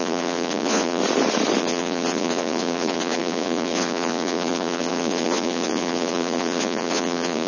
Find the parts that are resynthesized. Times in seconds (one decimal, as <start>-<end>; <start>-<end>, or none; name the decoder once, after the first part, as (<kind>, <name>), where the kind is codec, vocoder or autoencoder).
0.0-1.0 (vocoder, Vocos); 1.6-7.5